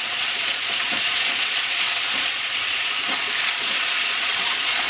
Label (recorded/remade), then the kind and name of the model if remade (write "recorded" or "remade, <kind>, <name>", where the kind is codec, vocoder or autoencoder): remade, vocoder, Vocos